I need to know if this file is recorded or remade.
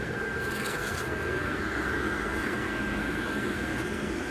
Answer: remade